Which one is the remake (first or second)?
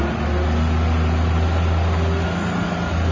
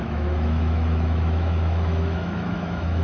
second